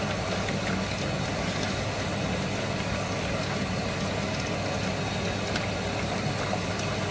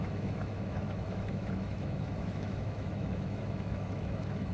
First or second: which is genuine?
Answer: first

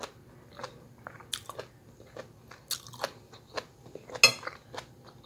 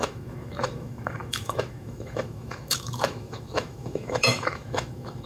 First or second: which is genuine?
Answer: first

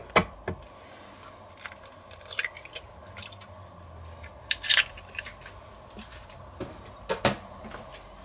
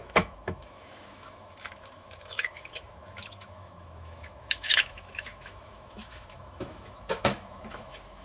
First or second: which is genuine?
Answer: first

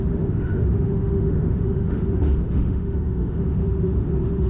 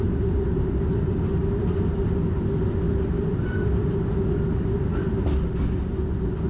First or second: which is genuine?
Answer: second